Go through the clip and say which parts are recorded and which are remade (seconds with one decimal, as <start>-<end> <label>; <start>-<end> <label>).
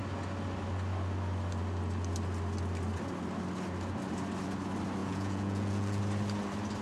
0.0-5.0 recorded; 5.0-6.0 remade; 6.0-6.8 recorded